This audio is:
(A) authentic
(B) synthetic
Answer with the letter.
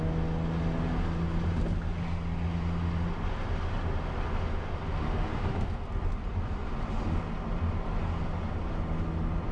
A